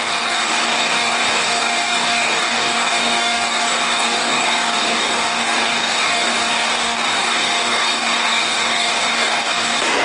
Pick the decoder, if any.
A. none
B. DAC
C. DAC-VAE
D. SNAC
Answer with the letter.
B